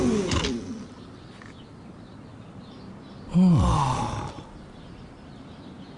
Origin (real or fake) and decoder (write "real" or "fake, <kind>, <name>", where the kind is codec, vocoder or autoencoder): real